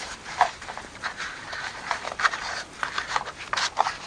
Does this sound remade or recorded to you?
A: remade